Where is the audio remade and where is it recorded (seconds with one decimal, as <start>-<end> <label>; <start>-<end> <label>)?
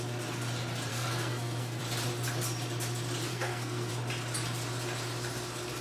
0.0-0.9 recorded; 0.9-1.8 remade; 1.8-3.3 recorded; 3.3-3.9 remade; 3.9-5.8 recorded